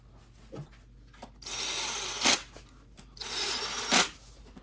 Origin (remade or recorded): recorded